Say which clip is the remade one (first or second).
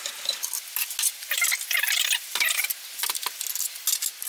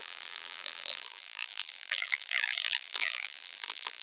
second